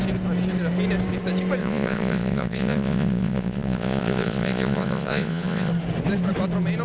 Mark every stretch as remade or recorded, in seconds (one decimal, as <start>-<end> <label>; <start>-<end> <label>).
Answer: 0.0-1.6 recorded; 1.6-5.7 remade; 5.7-6.8 recorded